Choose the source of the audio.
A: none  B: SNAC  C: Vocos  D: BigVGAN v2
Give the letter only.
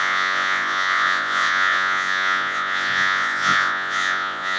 C